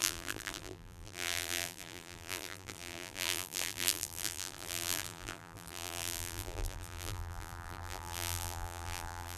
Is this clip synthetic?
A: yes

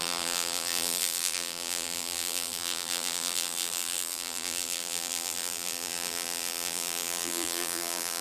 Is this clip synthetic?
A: yes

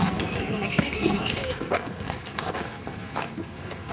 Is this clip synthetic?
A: yes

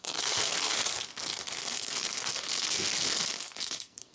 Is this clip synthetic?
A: yes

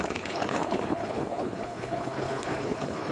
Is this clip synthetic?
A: yes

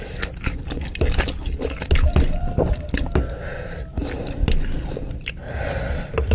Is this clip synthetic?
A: no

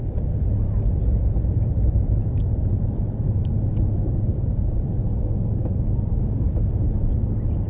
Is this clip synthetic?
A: yes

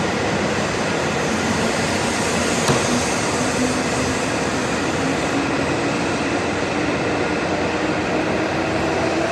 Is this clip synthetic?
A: no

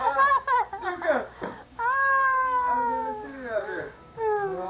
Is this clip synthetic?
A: yes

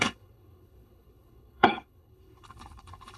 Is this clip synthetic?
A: yes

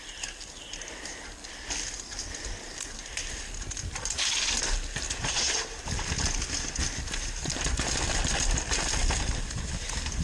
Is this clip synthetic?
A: no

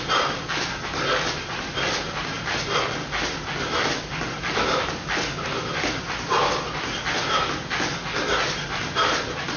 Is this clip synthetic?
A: no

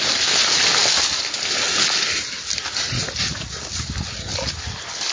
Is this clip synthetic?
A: no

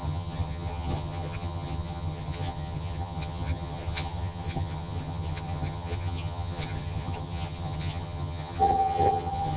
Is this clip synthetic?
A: yes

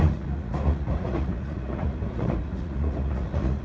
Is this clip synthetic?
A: yes